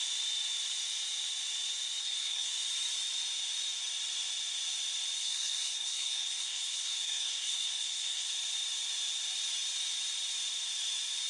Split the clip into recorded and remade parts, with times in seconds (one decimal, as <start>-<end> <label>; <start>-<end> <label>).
0.0-2.0 recorded; 2.0-2.5 remade; 2.5-5.2 recorded; 5.2-8.3 remade; 8.3-11.3 recorded